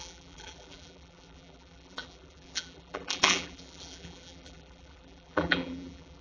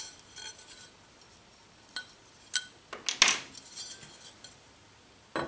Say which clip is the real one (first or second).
second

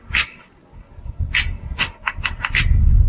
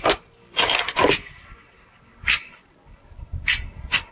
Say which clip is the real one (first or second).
first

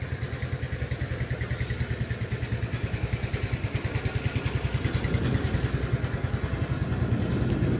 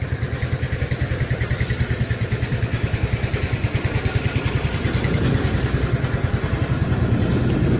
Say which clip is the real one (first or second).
first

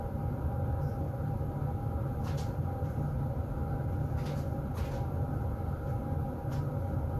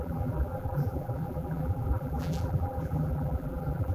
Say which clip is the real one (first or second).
first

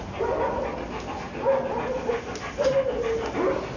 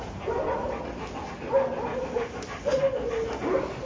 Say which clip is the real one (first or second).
first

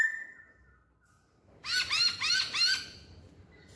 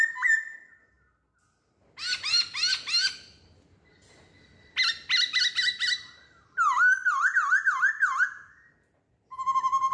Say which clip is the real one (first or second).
second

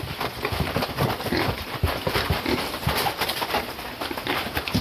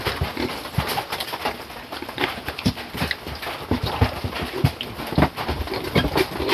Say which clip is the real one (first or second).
second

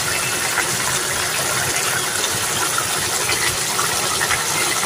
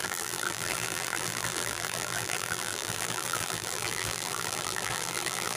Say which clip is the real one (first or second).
first